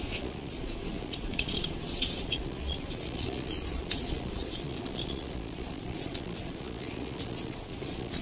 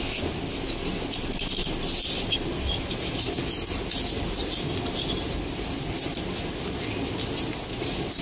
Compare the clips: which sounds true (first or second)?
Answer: second